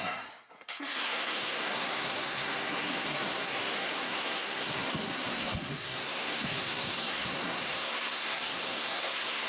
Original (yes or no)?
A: no